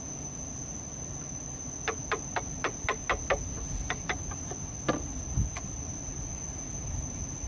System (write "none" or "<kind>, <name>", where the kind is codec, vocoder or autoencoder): none